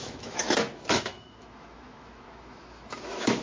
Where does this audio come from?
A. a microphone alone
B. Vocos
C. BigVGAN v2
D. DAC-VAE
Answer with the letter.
D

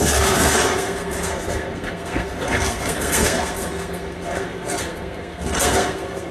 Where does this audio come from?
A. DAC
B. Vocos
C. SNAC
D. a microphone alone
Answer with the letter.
C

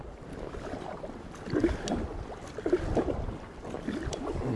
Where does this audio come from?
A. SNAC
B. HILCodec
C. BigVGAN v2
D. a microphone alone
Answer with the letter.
D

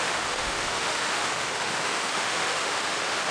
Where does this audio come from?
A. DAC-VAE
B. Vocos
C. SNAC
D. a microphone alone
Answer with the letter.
A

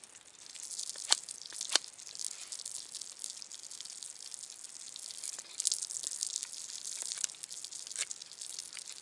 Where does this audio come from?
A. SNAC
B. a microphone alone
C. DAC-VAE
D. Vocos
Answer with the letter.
B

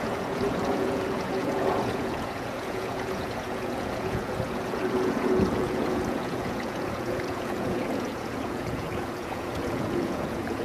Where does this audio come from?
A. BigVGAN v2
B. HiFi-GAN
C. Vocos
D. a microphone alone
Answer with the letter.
C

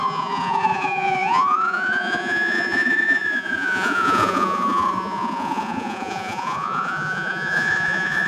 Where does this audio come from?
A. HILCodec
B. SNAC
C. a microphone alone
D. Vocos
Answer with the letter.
D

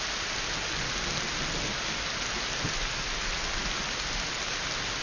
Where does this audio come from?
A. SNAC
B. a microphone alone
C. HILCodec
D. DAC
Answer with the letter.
B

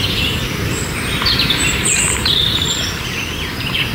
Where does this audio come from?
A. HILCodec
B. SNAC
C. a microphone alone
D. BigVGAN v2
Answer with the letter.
D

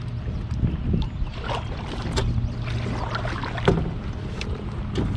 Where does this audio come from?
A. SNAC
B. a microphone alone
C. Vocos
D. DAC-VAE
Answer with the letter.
B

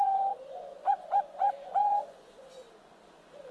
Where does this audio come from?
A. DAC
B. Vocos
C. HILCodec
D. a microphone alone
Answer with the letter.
B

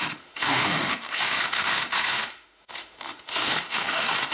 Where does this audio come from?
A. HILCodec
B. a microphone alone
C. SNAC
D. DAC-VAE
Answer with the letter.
D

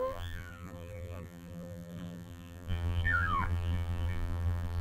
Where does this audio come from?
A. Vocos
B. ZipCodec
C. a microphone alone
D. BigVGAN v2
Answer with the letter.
D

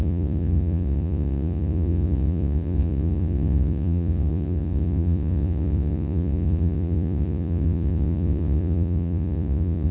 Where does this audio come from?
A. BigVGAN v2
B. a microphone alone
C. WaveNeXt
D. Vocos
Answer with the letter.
D